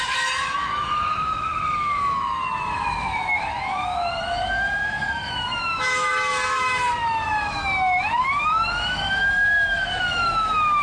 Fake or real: fake